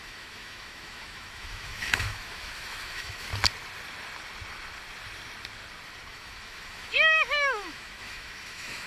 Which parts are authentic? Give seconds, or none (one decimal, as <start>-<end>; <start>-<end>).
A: 3.3-6.1